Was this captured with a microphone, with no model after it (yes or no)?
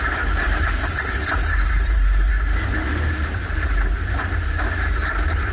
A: no